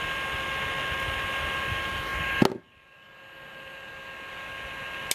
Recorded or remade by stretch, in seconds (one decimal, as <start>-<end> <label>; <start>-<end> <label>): 0.0-5.1 recorded